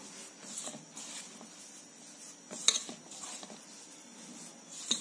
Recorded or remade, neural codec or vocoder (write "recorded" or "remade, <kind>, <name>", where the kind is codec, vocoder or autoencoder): recorded